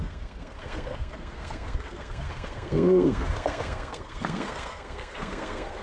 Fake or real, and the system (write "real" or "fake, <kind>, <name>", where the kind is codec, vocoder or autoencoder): fake, codec, SNAC